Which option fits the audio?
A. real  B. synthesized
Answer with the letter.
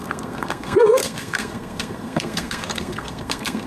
B